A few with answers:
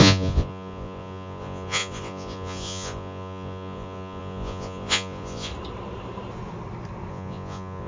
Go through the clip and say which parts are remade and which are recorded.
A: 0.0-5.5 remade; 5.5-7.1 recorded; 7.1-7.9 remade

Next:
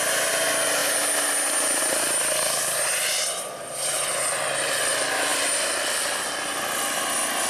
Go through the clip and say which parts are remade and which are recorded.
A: 0.0-7.5 recorded

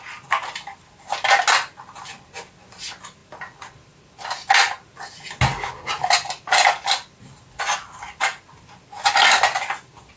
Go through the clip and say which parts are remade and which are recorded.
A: 0.0-10.2 recorded